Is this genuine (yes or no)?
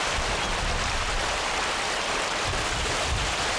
yes